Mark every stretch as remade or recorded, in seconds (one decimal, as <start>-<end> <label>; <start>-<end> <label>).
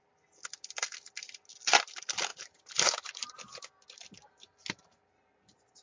0.0-2.3 recorded; 2.3-3.5 remade; 3.5-5.8 recorded